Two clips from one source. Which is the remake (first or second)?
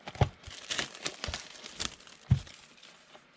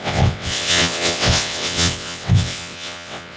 second